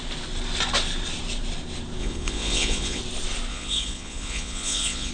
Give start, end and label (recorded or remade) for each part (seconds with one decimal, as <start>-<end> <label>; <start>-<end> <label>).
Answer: 0.0-2.0 recorded; 2.0-3.0 remade; 3.0-3.5 recorded; 3.5-5.1 remade